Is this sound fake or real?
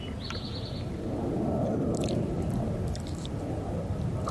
real